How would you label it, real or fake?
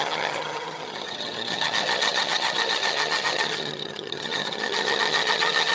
fake